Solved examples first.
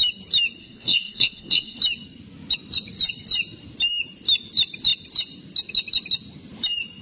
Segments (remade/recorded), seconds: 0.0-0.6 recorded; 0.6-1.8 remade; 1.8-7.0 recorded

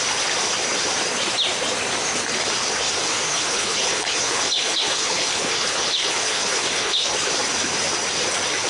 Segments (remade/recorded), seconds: 0.0-3.0 recorded; 3.0-7.1 remade; 7.1-8.7 recorded

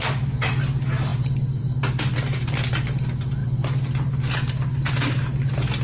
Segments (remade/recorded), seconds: 0.0-5.8 recorded

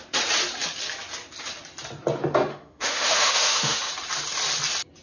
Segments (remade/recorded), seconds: 0.0-2.5 recorded; 2.5-3.9 remade; 3.9-5.0 recorded

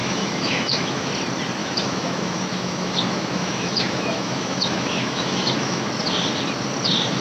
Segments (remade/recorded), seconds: 0.0-1.1 remade; 1.1-1.6 recorded; 1.6-5.9 remade; 5.9-7.2 recorded